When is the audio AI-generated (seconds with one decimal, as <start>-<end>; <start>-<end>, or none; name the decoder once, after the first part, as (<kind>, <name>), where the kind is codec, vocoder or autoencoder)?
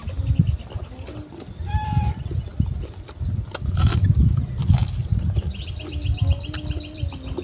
none